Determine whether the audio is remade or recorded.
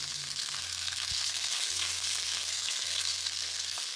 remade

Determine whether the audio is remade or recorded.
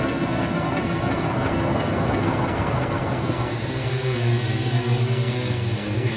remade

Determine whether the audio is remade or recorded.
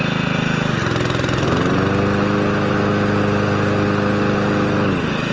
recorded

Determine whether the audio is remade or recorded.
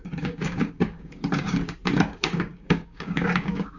remade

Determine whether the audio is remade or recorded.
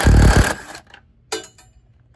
recorded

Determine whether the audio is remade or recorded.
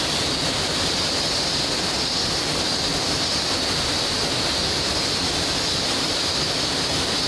recorded